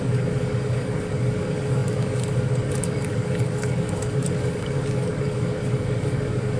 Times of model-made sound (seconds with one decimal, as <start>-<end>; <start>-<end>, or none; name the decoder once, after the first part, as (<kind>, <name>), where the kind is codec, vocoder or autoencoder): 0.0-6.6 (codec, DAC)